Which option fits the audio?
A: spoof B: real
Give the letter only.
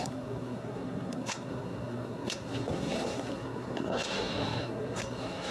A